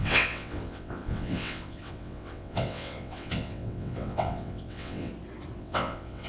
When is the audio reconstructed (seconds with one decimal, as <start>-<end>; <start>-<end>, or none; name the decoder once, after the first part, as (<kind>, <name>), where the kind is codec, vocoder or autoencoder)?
0.0-5.1 (vocoder, WaveNeXt); 5.6-6.3